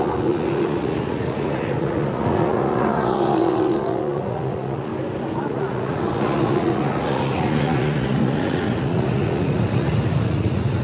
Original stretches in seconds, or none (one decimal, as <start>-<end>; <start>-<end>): 4.9-5.4